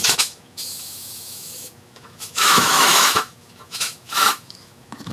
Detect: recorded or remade remade